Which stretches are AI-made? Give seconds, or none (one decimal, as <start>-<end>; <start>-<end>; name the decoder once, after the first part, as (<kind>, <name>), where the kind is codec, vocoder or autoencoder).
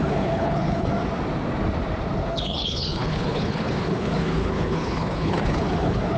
0.0-0.9 (codec, HILCodec); 2.2-6.2